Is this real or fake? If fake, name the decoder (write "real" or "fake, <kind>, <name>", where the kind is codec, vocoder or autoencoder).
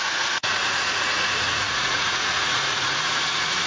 fake, vocoder, Vocos